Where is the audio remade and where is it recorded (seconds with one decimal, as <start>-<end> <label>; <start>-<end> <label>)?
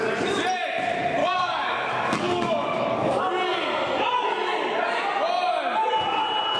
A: 0.0-1.2 recorded; 1.2-3.2 remade; 3.2-6.6 recorded